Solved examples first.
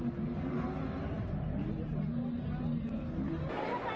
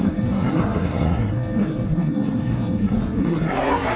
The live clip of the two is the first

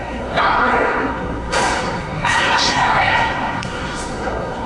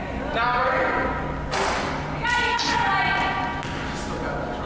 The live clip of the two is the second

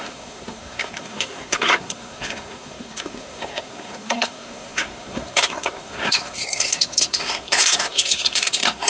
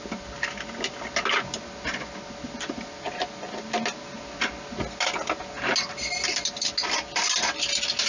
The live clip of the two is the second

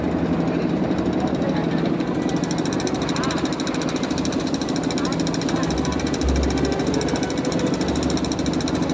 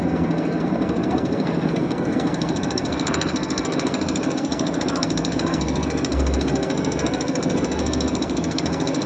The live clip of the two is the first